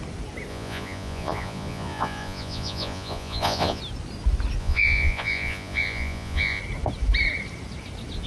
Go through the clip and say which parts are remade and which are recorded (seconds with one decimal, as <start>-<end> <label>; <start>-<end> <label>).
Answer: 0.0-0.5 recorded; 0.5-3.8 remade; 3.8-4.6 recorded; 4.6-6.6 remade; 6.6-8.3 recorded

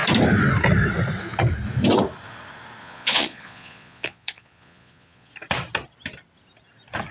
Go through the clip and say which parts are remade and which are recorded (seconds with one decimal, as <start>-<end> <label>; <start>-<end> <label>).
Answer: 0.0-2.8 recorded; 2.8-5.3 remade; 5.3-7.1 recorded

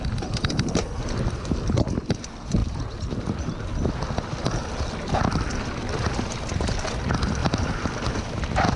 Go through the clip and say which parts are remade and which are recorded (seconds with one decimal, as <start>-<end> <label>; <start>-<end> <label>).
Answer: 0.0-7.4 recorded; 7.4-8.1 remade; 8.1-8.8 recorded

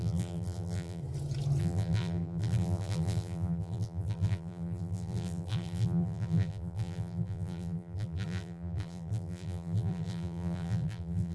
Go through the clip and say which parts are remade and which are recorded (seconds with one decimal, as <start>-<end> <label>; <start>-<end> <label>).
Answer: 0.0-1.0 remade; 1.0-1.6 recorded; 1.6-11.3 remade